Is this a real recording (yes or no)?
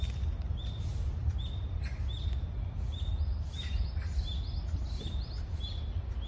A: yes